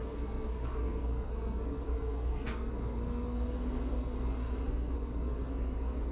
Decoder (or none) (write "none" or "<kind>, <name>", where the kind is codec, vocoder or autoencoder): codec, SNAC